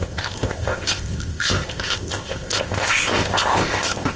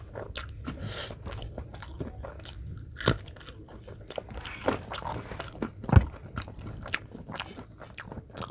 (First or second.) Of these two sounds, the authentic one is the second